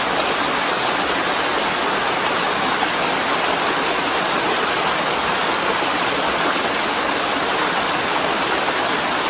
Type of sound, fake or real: real